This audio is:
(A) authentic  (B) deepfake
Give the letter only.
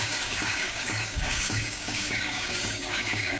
B